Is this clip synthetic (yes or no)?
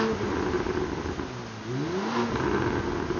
no